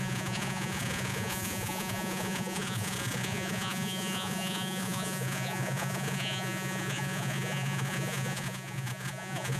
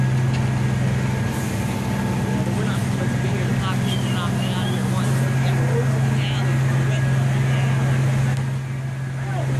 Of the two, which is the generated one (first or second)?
first